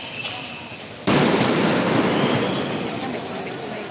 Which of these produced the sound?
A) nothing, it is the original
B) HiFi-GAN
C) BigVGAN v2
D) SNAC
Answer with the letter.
A